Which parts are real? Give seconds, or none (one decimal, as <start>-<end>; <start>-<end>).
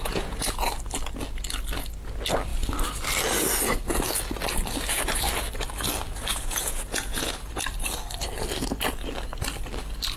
0.7-6.3; 7.5-10.2